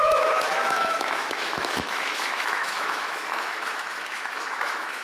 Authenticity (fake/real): fake